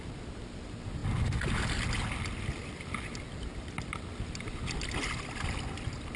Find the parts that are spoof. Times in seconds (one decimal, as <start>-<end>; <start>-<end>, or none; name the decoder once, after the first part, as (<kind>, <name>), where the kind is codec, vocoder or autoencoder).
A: none